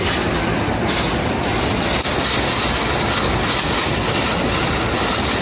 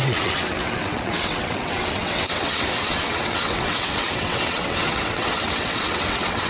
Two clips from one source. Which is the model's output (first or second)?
second